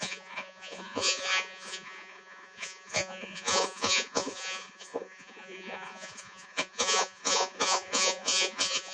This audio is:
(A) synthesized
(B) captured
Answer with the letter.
A